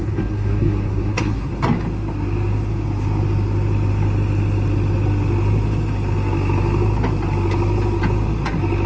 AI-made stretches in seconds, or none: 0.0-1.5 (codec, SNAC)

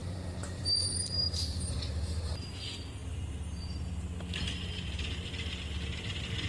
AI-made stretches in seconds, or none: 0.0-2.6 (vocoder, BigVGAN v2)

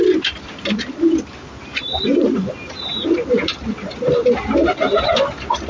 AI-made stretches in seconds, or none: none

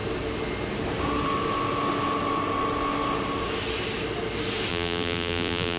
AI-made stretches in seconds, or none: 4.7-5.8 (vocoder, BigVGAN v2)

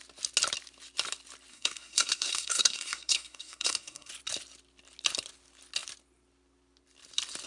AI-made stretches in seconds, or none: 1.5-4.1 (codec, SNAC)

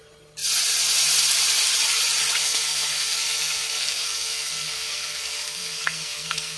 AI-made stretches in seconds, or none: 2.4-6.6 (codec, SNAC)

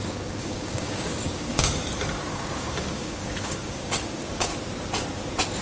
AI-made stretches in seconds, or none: 0.0-1.8 (codec, DAC); 2.3-4.5

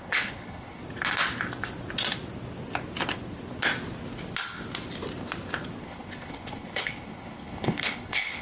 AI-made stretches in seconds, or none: 0.0-0.8 (codec, HILCodec); 5.8-8.4